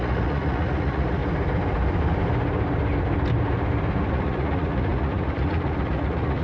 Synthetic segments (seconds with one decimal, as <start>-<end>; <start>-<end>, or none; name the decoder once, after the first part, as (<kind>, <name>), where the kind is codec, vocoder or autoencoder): 0.0-1.2 (vocoder, Vocos); 4.1-6.4